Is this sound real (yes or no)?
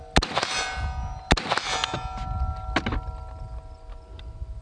yes